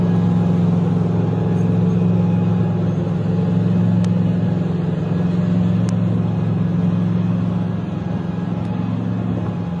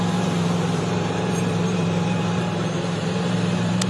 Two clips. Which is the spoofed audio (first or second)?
second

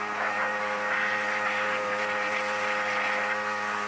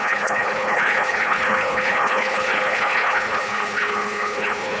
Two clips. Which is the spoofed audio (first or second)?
second